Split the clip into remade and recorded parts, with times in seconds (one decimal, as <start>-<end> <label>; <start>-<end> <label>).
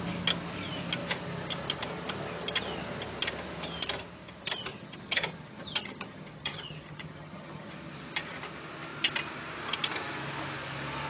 0.0-4.7 recorded; 4.7-7.7 remade; 7.7-11.1 recorded